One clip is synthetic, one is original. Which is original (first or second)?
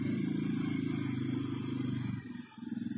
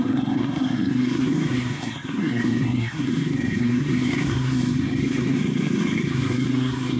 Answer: first